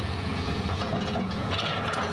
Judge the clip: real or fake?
fake